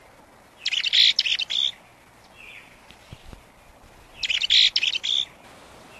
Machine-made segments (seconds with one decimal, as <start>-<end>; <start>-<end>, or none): none